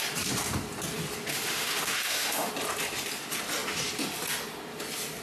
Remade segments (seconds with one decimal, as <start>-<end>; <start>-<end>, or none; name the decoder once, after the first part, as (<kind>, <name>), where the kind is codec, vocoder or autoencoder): 1.3-2.5 (autoencoder, DAC-VAE)